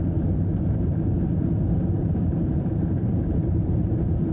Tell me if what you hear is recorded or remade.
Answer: remade